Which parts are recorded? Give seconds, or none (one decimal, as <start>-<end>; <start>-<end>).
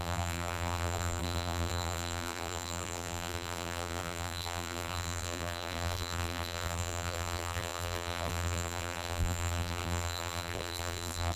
none